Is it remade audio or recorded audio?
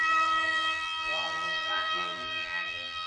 remade